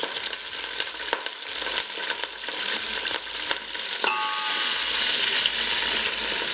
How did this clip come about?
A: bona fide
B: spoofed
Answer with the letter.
A